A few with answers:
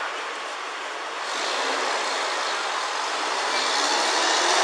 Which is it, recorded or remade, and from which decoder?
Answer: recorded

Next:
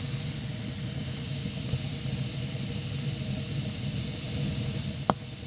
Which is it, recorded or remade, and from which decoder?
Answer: recorded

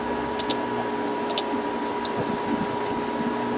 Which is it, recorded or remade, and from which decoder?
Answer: recorded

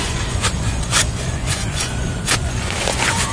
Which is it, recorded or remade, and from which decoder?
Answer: remade, vocoder, Vocos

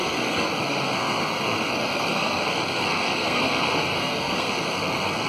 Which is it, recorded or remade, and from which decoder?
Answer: remade, codec, SNAC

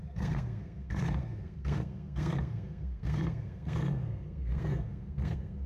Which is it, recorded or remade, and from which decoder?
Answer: remade, codec, SNAC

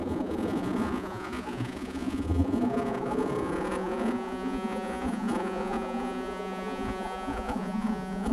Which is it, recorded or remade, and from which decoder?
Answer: remade, vocoder, Vocos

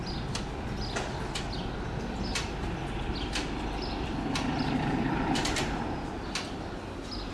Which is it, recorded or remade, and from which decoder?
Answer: recorded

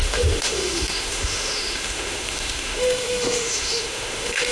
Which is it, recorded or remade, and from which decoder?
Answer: remade, autoencoder, DAC-VAE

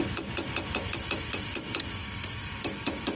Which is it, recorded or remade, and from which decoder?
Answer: recorded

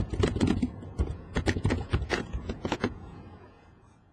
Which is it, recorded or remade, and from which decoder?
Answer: remade, vocoder, Vocos